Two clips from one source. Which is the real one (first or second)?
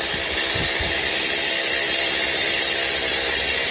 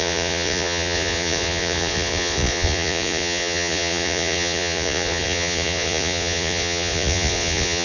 first